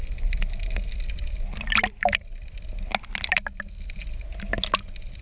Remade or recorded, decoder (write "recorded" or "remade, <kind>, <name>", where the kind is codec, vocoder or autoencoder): recorded